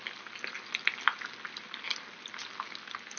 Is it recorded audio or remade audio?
recorded